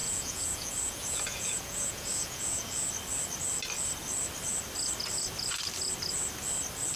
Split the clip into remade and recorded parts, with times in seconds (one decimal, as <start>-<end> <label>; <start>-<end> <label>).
0.0-2.7 remade; 2.7-7.0 recorded